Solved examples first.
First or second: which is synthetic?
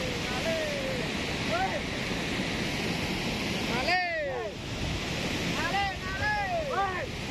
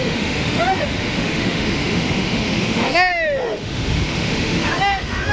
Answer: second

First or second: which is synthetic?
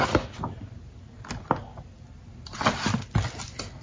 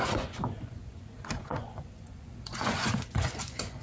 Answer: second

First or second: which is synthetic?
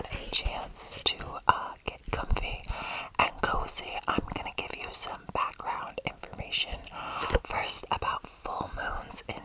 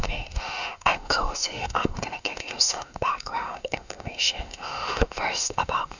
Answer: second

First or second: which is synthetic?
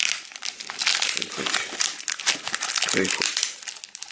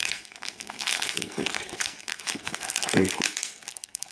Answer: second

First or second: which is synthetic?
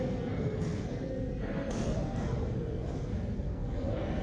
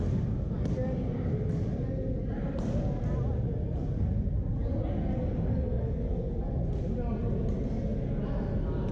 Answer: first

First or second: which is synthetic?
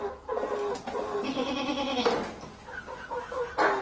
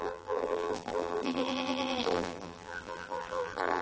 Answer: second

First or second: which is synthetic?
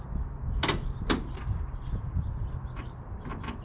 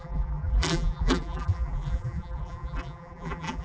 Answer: second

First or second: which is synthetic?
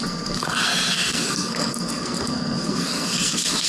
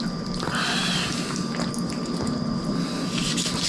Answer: first